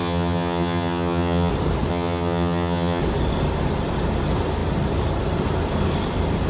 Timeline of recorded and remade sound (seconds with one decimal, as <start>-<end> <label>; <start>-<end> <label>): 0.0-1.5 remade; 1.5-1.9 recorded; 1.9-3.0 remade; 3.0-6.5 recorded